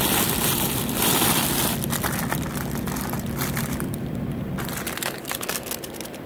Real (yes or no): no